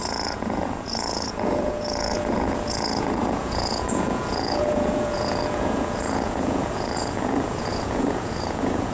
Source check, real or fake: fake